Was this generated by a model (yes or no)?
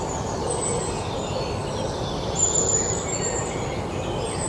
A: no